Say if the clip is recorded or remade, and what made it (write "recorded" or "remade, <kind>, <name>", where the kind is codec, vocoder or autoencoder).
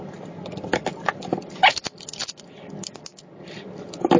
recorded